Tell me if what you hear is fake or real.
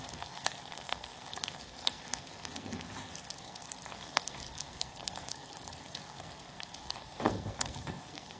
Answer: fake